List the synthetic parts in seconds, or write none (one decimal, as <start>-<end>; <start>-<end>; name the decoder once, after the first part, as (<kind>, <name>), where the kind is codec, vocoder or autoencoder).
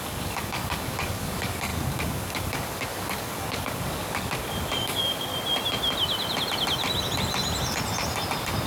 0.0-5.3 (codec, DAC)